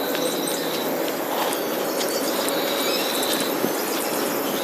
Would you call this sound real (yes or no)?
yes